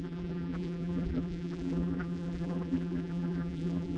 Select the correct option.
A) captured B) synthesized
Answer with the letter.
B